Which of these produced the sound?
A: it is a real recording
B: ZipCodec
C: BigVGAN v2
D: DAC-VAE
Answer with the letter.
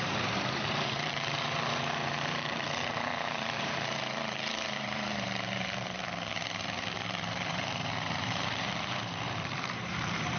C